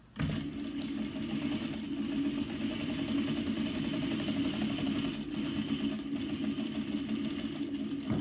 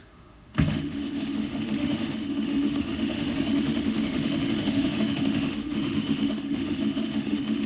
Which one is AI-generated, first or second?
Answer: second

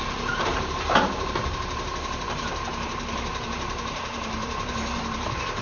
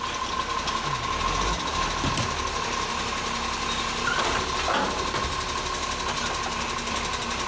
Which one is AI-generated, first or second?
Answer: first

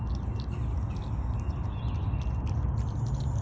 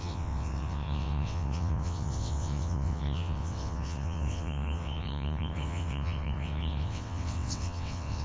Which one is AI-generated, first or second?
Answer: second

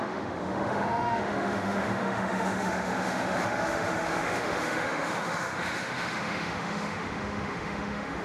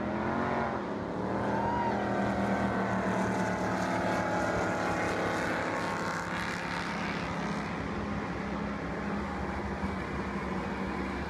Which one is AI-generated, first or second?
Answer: first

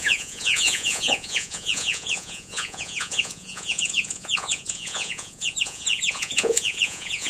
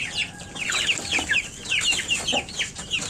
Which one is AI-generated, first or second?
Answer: first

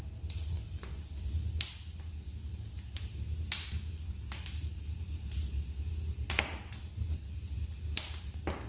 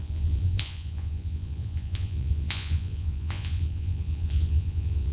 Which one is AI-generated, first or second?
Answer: second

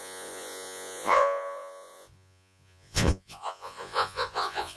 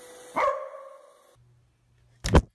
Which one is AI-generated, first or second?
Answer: first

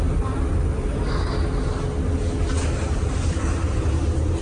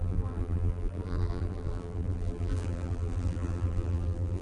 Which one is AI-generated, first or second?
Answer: second